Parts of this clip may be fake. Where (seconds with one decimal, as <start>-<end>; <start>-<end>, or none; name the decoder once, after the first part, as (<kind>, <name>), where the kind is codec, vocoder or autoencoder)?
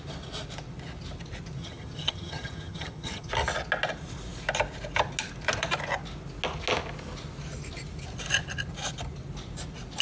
1.6-3.3 (vocoder, HiFi-GAN)